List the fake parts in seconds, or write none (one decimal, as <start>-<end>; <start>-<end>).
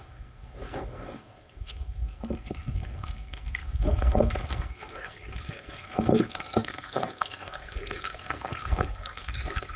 0.0-9.8